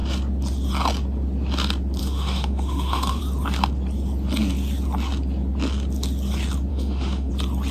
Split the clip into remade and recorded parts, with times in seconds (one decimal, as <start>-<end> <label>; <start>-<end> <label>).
0.0-2.0 recorded; 2.0-3.2 remade; 3.2-6.7 recorded; 6.7-7.3 remade; 7.3-7.7 recorded